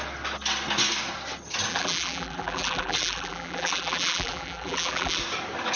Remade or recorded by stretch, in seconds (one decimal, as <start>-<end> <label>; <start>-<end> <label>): 0.0-1.7 recorded; 1.7-5.2 remade; 5.2-5.8 recorded